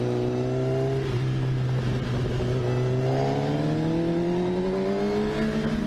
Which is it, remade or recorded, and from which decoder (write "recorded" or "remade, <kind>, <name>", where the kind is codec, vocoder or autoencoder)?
recorded